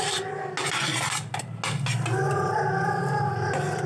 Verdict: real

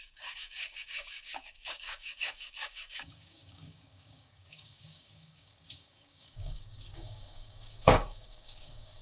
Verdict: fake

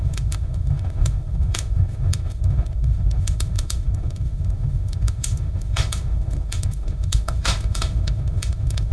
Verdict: fake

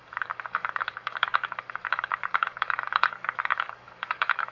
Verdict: fake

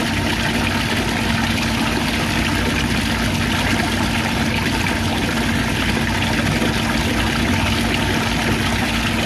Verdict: real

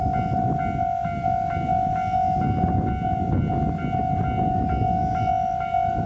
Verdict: real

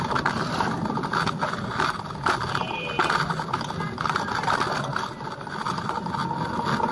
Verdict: real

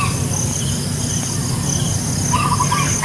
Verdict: real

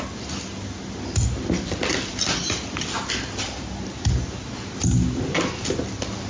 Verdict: real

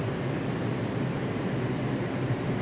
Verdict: real